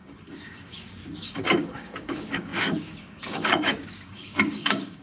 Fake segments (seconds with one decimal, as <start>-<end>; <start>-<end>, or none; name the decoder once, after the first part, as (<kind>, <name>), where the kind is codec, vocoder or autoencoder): 0.0-5.0 (codec, DAC)